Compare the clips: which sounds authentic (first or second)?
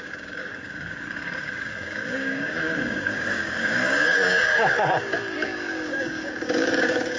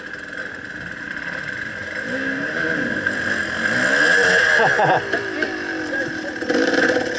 second